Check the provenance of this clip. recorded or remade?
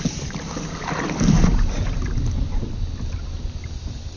recorded